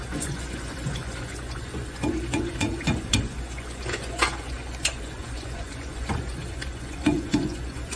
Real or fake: fake